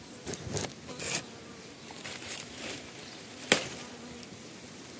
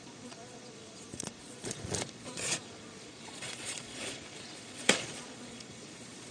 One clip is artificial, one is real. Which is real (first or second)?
first